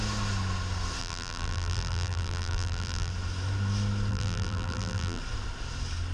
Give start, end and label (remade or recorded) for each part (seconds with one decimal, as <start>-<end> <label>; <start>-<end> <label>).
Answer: 0.0-1.0 recorded; 1.0-3.1 remade; 3.1-4.1 recorded; 4.1-5.2 remade; 5.2-6.1 recorded